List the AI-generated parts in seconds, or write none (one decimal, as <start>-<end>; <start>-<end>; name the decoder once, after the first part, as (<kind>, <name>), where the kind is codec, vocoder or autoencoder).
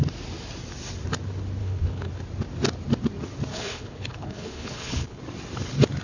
1.6-2.1 (codec, HILCodec); 3.5-5.2